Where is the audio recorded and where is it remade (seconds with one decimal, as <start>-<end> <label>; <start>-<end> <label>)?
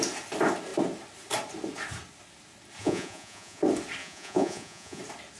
0.0-2.8 recorded; 2.8-3.6 remade; 3.6-4.0 recorded; 4.0-5.0 remade; 5.0-5.4 recorded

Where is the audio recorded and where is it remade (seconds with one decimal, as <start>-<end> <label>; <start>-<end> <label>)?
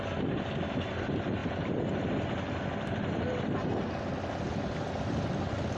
0.0-5.8 recorded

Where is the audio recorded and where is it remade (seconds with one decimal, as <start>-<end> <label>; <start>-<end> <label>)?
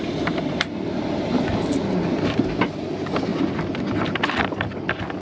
0.0-5.2 recorded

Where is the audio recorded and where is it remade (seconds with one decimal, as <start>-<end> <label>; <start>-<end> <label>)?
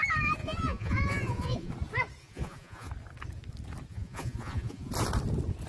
0.0-0.4 recorded; 0.4-1.7 remade; 1.7-2.2 recorded; 2.2-2.9 remade; 2.9-3.9 recorded; 3.9-4.9 remade; 4.9-5.7 recorded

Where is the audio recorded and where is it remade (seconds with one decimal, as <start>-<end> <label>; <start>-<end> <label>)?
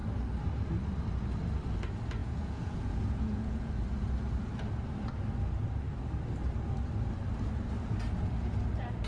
0.0-2.2 recorded; 2.2-3.7 remade; 3.7-9.1 recorded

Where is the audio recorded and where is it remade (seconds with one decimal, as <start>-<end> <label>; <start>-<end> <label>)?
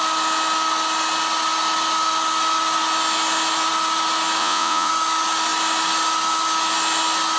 0.0-4.4 recorded; 4.4-4.9 remade; 4.9-7.4 recorded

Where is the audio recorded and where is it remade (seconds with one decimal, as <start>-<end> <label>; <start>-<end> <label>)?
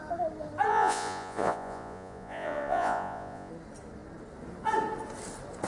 0.0-0.7 recorded; 0.7-3.5 remade; 3.5-5.7 recorded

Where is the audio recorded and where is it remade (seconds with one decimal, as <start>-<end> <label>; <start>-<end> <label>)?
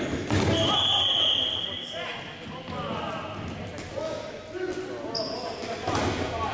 0.0-6.5 recorded